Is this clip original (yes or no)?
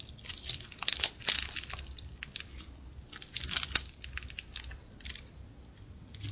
yes